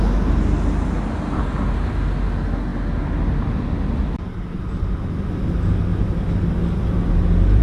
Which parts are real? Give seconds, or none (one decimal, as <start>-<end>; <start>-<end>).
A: 0.0-7.6